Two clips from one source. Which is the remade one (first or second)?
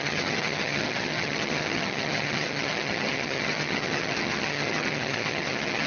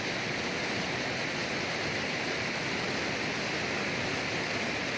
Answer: first